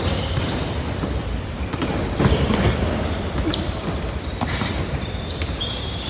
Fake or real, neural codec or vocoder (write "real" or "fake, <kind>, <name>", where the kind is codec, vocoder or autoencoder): fake, vocoder, BigVGAN v2